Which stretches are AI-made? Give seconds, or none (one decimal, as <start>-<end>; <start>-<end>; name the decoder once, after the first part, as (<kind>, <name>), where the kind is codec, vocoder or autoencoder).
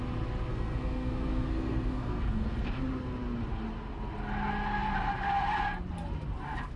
0.5-2.8 (codec, SNAC)